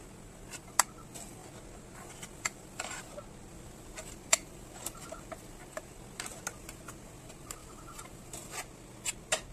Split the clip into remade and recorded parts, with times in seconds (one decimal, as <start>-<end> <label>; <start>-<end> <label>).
0.0-1.4 recorded; 1.4-5.6 remade; 5.6-7.6 recorded; 7.6-8.1 remade; 8.1-9.5 recorded